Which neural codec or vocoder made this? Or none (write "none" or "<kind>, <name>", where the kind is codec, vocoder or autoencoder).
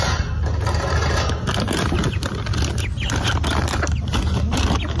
none